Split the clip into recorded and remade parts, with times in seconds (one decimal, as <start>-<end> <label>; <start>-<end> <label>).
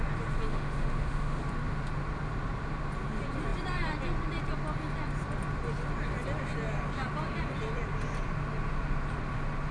0.0-0.5 recorded; 0.5-1.4 remade; 1.4-9.7 recorded